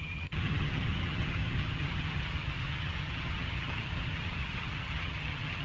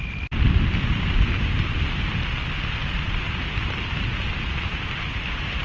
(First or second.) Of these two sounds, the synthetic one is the first